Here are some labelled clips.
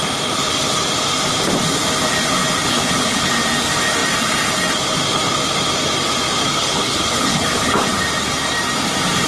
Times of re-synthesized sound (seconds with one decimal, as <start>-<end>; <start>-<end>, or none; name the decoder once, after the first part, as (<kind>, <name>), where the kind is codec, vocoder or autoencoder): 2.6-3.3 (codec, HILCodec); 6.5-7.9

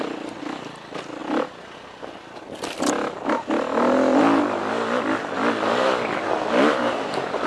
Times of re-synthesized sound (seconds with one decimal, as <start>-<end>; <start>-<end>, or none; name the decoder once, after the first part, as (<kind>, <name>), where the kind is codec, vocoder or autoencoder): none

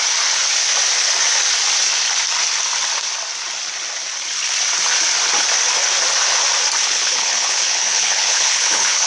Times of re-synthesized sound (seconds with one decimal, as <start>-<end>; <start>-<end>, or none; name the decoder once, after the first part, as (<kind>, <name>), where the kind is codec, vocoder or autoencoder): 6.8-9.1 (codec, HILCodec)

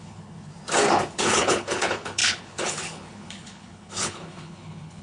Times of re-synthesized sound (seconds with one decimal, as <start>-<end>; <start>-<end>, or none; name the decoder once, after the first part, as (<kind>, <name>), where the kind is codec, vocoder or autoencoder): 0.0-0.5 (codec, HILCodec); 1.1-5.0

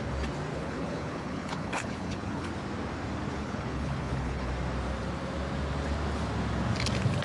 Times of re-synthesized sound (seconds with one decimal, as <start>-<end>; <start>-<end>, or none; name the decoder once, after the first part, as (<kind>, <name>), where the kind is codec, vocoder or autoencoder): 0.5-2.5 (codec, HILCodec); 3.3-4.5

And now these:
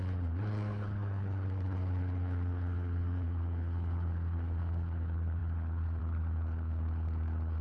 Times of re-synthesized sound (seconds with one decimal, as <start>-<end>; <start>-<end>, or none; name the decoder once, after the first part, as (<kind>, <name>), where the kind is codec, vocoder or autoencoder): 0.0-7.6 (codec, HILCodec)